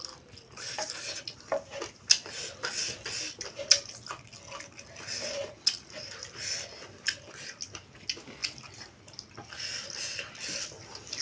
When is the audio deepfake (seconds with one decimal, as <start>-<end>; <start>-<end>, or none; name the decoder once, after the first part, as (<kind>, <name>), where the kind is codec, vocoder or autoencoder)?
none